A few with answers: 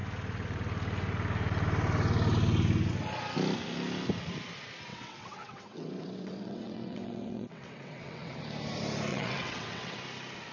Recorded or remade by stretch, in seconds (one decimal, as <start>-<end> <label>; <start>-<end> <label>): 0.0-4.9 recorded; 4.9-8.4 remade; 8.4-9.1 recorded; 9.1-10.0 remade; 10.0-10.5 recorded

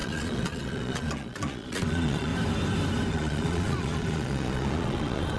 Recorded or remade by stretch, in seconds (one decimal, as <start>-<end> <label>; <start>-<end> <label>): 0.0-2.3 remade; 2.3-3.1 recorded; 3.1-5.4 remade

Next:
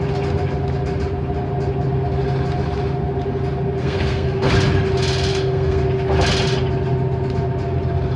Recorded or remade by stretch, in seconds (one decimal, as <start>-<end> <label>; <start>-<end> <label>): 0.0-3.8 recorded; 3.8-4.5 remade; 4.5-5.3 recorded; 5.3-5.8 remade; 5.8-8.2 recorded

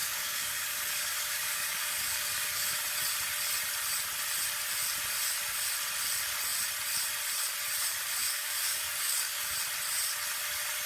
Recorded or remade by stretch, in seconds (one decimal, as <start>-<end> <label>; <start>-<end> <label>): 0.0-2.8 remade; 2.8-8.2 recorded; 8.2-9.6 remade; 9.6-10.9 recorded

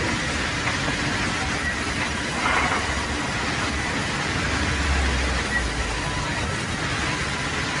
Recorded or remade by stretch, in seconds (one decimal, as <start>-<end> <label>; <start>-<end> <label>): 0.0-7.8 recorded

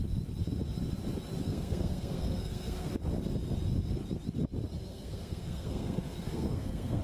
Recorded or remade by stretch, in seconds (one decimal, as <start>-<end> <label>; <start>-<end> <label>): 0.0-1.5 recorded; 1.5-2.9 remade; 2.9-4.9 recorded; 4.9-7.0 remade

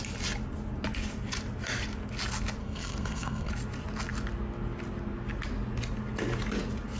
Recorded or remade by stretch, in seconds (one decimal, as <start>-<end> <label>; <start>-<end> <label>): 0.0-2.6 recorded; 2.6-3.5 remade; 3.5-7.0 recorded

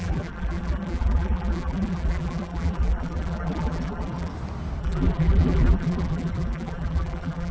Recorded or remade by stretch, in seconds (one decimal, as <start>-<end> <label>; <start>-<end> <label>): 0.0-4.3 remade; 4.3-4.8 recorded; 4.8-7.5 remade